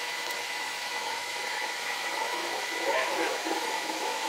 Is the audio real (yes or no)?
no